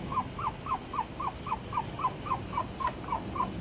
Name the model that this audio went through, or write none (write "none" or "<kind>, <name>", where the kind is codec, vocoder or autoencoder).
none